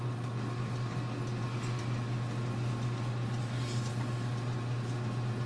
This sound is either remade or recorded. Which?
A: recorded